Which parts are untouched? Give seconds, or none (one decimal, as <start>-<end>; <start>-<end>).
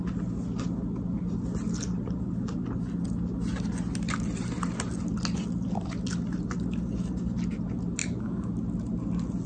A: 0.0-8.0; 8.5-9.5